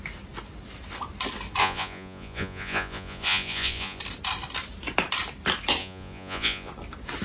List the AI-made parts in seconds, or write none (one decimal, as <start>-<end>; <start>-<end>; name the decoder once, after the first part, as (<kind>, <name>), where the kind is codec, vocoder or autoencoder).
1.6-4.0 (vocoder, Vocos); 5.8-6.7